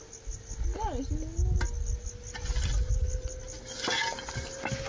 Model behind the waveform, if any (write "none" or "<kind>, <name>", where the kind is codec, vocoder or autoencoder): none